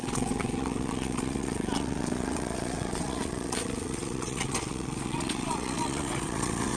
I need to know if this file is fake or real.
fake